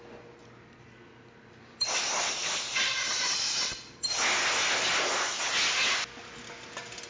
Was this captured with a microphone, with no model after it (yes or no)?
yes